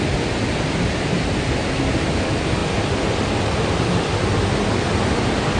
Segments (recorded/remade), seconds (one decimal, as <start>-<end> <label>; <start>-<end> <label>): 0.0-5.6 recorded